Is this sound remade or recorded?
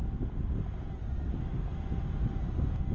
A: recorded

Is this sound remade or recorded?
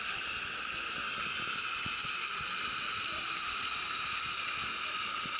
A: recorded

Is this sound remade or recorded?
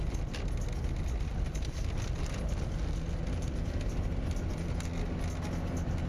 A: recorded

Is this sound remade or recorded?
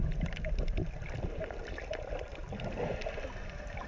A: recorded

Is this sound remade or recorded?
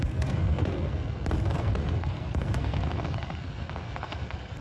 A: remade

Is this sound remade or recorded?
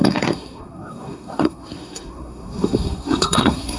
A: remade